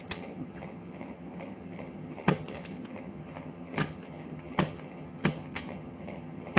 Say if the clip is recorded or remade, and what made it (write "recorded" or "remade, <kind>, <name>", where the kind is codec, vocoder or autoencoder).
remade, vocoder, HiFi-GAN